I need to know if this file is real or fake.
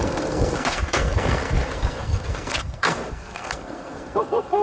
fake